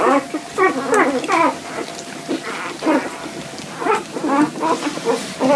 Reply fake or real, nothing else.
real